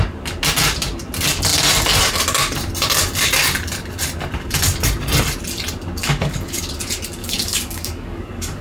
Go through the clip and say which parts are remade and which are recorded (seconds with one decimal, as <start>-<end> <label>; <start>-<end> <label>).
0.0-6.0 recorded; 6.0-6.7 remade; 6.7-7.2 recorded; 7.2-8.6 remade